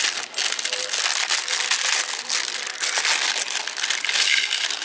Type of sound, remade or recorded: recorded